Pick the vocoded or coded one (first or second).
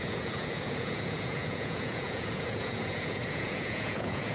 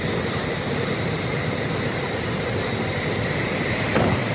first